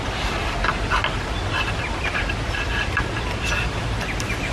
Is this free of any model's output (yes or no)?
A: yes